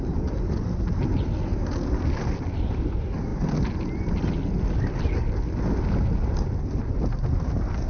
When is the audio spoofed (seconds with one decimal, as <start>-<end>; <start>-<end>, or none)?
none